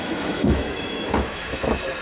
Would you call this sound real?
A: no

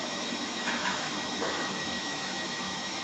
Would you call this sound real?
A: no